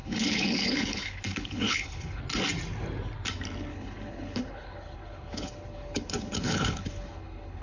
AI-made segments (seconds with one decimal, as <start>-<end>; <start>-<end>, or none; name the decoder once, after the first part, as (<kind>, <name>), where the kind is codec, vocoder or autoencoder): 0.0-2.2 (codec, HILCodec); 3.7-7.6